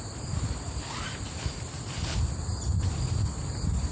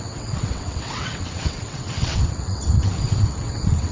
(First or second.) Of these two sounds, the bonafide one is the first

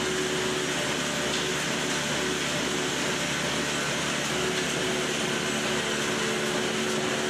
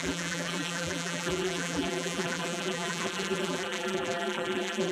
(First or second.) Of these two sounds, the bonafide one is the first